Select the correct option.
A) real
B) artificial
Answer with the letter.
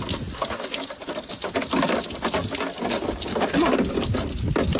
A